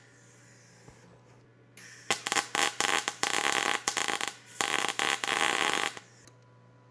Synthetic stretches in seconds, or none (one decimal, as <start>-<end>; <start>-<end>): 4.0-4.5; 5.3-6.0